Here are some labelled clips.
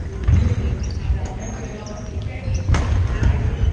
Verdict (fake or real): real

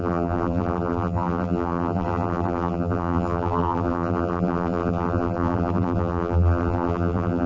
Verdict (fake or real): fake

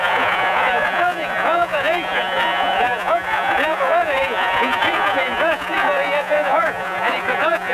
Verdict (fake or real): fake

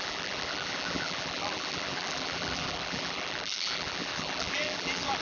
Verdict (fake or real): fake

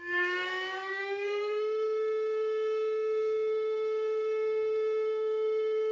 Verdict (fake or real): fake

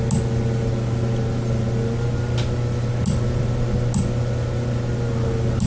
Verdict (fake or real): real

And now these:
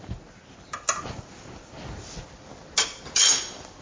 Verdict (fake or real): real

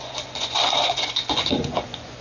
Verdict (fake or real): fake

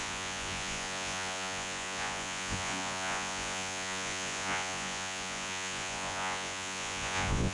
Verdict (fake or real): fake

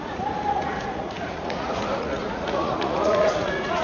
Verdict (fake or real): fake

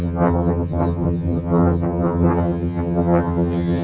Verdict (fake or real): fake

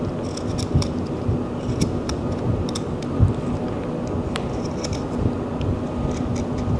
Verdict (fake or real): real